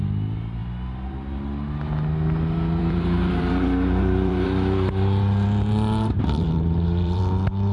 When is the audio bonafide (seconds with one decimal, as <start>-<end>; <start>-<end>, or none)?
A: 0.0-2.8; 7.2-7.7

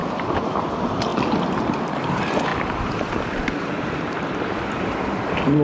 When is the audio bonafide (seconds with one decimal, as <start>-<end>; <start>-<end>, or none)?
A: 1.1-1.9

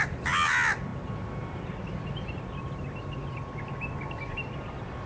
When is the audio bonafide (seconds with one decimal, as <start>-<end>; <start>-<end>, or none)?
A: 0.0-5.1

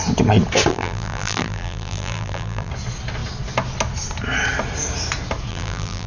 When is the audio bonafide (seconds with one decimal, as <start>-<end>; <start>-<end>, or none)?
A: 0.0-0.7; 2.7-5.5

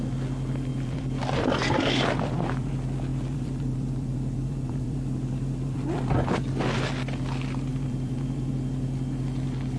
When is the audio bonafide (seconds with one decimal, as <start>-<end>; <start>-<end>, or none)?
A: 0.0-0.7; 2.7-3.1; 6.4-7.7; 8.5-9.8